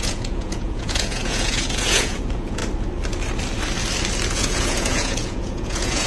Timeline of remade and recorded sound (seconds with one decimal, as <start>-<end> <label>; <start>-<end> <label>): 0.0-2.6 remade; 2.6-4.3 recorded; 4.3-6.1 remade